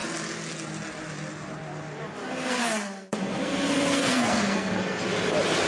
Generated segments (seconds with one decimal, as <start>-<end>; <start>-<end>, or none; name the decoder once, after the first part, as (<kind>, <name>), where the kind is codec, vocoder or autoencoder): 2.2-5.0 (codec, SNAC)